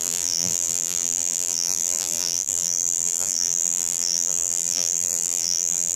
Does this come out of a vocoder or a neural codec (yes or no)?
yes